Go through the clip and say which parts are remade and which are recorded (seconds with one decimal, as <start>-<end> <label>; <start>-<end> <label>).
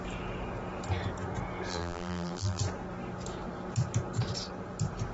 0.0-1.7 recorded; 1.7-2.6 remade; 2.6-5.1 recorded